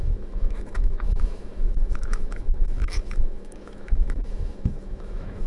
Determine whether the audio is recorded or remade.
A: remade